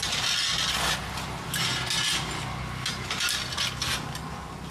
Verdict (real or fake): real